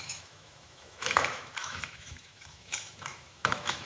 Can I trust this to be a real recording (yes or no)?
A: no